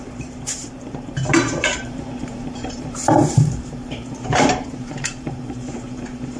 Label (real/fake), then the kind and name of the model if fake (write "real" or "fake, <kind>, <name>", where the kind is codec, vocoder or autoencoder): fake, vocoder, BigVGAN v2